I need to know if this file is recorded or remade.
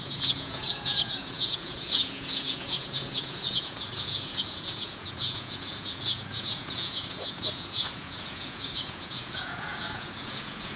remade